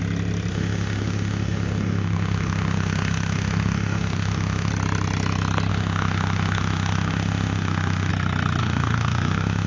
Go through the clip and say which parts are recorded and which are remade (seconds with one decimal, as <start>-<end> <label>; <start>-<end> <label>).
0.0-0.5 recorded; 0.5-4.7 remade; 4.7-5.7 recorded; 5.7-8.1 remade; 8.1-8.6 recorded; 8.6-9.7 remade